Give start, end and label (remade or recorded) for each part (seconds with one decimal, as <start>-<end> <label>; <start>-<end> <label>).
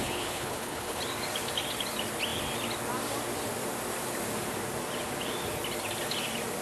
0.0-1.0 remade; 1.0-6.6 recorded